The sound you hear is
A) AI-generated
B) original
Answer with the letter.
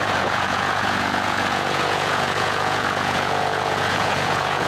A